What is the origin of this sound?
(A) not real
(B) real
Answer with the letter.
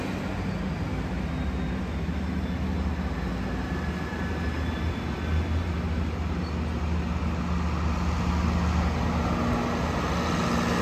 B